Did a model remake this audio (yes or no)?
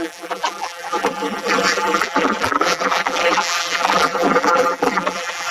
yes